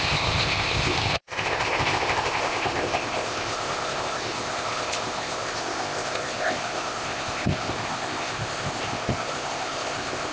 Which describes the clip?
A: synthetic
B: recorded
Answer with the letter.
A